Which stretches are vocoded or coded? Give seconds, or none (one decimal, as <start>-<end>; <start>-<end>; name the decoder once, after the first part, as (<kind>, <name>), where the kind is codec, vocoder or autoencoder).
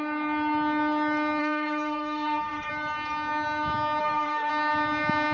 1.4-2.7 (autoencoder, DAC-VAE); 4.0-4.5